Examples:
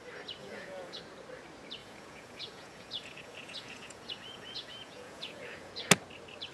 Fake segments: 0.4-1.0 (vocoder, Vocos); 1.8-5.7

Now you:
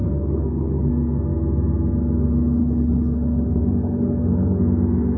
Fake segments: 0.0-0.9 (codec, HILCodec); 2.6-4.6

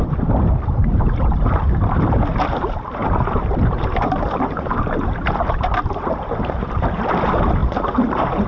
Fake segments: 0.8-1.4 (vocoder, BigVGAN v2); 3.0-7.1; 7.6-8.5

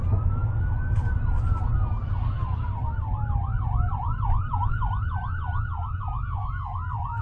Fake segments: none

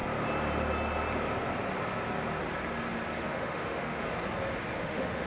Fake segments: 3.2-4.0 (autoencoder, DAC-VAE); 4.8-5.3